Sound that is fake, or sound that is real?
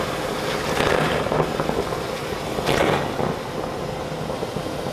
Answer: real